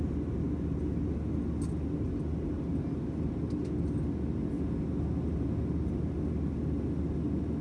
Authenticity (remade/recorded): recorded